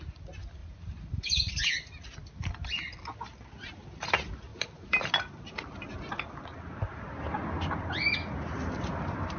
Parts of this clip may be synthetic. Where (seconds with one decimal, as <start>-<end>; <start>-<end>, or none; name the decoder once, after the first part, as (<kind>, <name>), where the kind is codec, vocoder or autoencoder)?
0.6-1.5 (vocoder, BigVGAN v2); 4.5-5.1